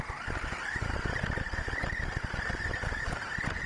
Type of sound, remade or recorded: recorded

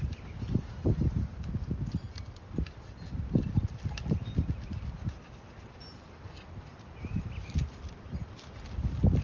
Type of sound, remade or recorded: recorded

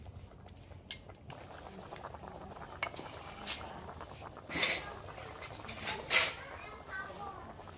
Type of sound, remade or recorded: recorded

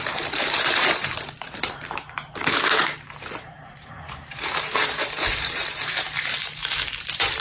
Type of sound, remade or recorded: remade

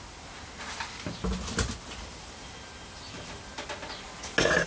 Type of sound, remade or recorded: recorded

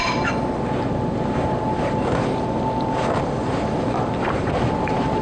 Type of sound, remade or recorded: remade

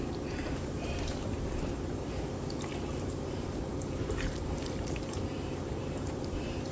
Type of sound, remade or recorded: remade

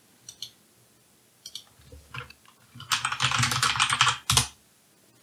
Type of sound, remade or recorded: recorded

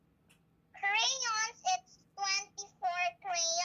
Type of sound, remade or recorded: recorded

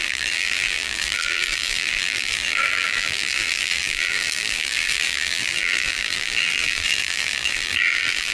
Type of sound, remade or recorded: remade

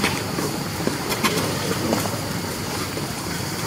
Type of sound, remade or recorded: remade